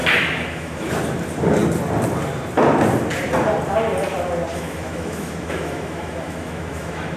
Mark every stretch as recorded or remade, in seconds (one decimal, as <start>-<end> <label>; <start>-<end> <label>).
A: 0.0-0.9 remade; 0.9-4.5 recorded; 4.5-7.2 remade